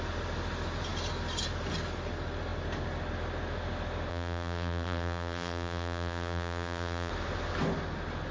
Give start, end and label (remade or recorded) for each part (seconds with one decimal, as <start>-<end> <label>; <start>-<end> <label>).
0.0-4.1 recorded; 4.1-7.1 remade; 7.1-8.3 recorded